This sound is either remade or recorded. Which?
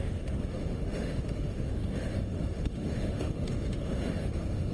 remade